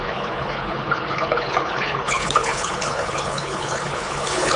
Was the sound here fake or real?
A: fake